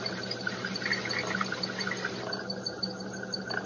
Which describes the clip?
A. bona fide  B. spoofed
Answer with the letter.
A